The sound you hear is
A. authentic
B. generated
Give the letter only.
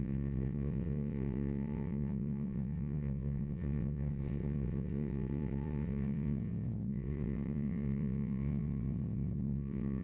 B